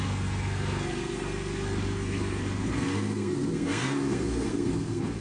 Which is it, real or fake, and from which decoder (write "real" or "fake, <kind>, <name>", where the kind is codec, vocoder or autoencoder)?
fake, codec, SNAC